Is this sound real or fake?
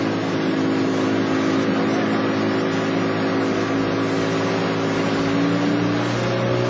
real